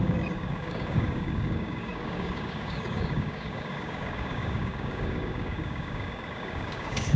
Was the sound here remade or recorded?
remade